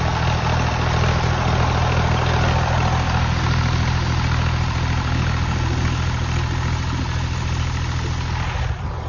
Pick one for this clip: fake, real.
real